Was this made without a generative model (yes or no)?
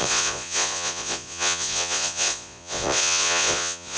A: no